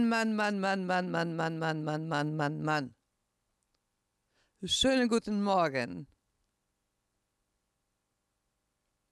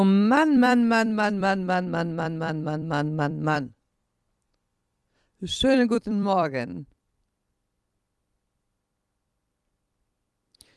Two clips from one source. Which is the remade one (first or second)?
second